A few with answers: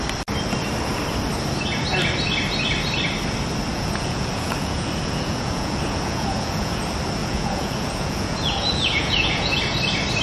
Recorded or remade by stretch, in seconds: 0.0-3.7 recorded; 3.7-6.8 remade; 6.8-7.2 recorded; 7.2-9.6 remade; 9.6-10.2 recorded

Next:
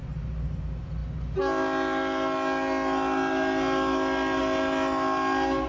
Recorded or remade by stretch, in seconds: 0.0-5.7 recorded

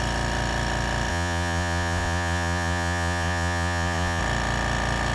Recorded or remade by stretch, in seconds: 0.0-1.1 recorded; 1.1-4.2 remade; 4.2-5.1 recorded